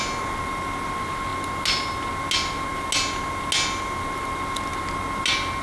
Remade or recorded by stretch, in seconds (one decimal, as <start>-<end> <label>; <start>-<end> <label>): 0.0-5.6 recorded

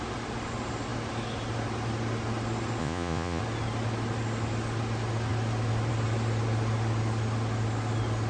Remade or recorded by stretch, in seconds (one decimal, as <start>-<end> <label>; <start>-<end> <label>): 0.0-2.8 recorded; 2.8-3.4 remade; 3.4-8.3 recorded

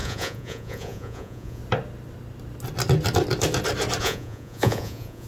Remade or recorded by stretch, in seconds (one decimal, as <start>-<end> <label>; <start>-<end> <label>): 0.0-1.6 remade; 1.6-4.0 recorded; 4.0-5.3 remade

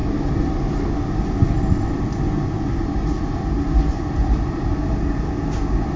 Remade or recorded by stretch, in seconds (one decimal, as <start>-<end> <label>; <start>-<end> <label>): 0.0-6.0 recorded